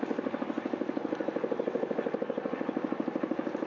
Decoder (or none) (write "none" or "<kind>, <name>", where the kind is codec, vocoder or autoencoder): none